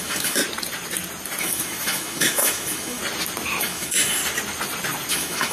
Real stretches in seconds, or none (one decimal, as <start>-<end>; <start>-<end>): 0.4-1.4; 3.0-3.6; 4.2-5.1